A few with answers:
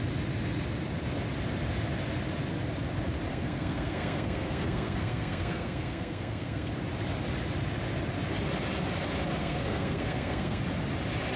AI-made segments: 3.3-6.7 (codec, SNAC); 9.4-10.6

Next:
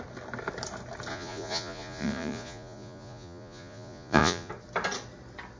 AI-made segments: 1.1-4.5 (vocoder, Vocos)

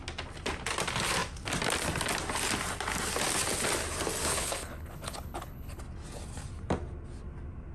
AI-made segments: 4.3-5.8 (codec, HILCodec)

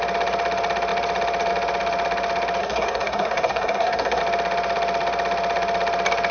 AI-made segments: 2.6-4.2 (codec, SNAC)